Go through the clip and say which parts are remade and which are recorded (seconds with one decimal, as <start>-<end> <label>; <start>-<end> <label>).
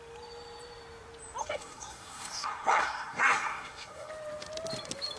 0.0-1.4 recorded; 1.4-4.1 remade; 4.1-5.2 recorded